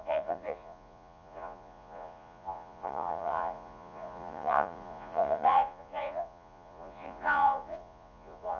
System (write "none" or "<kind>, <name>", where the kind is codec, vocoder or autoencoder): vocoder, Vocos